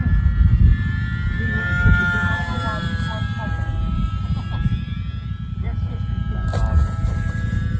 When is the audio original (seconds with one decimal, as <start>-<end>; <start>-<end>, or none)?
0.0-7.8